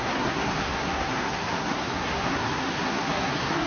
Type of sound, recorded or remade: remade